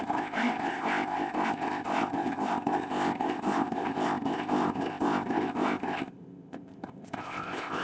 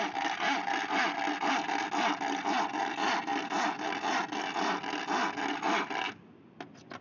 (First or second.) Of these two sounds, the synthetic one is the first